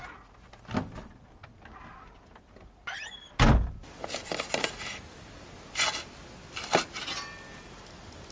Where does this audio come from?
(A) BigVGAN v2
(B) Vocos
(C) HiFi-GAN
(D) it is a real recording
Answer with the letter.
D